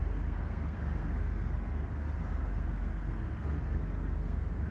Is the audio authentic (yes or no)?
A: no